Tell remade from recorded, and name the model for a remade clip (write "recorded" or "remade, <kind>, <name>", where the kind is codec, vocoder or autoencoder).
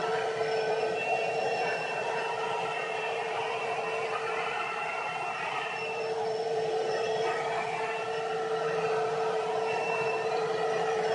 remade, vocoder, BigVGAN v2